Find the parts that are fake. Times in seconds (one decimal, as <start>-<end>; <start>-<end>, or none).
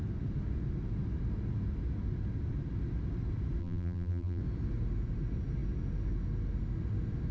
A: 3.6-4.4